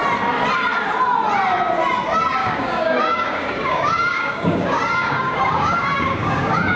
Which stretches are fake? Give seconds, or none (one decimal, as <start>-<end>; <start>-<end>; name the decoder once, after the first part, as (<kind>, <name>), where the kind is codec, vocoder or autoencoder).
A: 2.4-6.8 (codec, DAC)

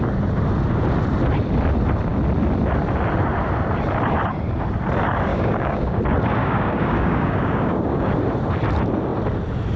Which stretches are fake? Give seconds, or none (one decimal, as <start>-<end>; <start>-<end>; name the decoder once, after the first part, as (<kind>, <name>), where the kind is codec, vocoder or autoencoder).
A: 5.3-6.0 (codec, DAC); 6.4-8.1

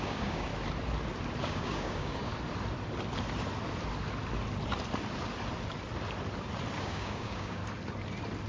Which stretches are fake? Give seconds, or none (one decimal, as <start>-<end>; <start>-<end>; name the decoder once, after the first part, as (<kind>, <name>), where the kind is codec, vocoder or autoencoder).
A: 0.0-0.5 (codec, DAC); 1.4-2.3; 6.8-7.6

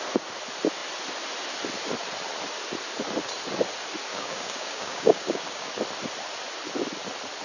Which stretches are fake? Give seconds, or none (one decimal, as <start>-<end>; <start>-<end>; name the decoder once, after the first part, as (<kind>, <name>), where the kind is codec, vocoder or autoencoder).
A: 4.1-5.7 (codec, DAC)

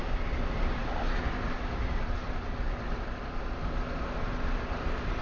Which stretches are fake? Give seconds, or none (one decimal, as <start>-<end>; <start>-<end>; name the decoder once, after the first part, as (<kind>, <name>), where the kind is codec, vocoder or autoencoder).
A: none

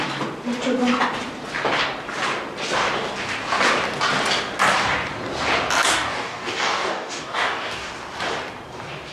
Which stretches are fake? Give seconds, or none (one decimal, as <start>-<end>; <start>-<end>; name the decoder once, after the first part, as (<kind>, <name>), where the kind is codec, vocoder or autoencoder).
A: 5.9-7.9 (codec, DAC)

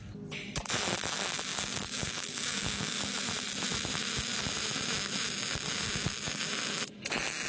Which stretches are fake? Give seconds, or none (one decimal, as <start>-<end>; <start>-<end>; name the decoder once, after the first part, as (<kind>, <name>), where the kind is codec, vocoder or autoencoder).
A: 1.5-3.0 (codec, DAC)